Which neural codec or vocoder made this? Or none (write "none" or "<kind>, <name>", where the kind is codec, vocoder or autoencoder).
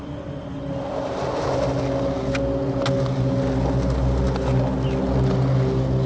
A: none